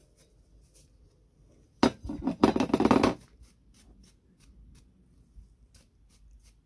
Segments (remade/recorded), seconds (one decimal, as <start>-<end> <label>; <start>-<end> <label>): 0.0-6.7 recorded